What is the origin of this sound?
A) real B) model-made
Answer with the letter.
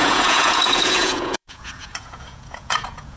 B